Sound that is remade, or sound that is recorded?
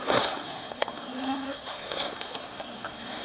remade